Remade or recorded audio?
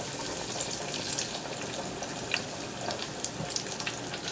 recorded